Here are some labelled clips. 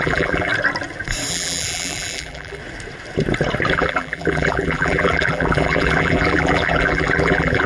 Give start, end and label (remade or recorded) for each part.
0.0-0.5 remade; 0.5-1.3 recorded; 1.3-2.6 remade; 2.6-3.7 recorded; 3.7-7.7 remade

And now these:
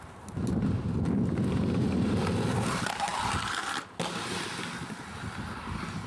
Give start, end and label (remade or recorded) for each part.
0.0-6.1 recorded

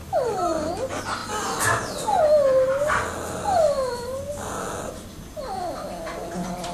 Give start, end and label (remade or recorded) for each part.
0.0-0.7 remade; 0.7-6.7 recorded